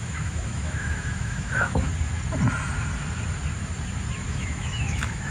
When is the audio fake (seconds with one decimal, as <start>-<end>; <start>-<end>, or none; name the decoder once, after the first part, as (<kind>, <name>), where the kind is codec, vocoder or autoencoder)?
0.0-1.9 (autoencoder, DAC-VAE); 4.3-5.3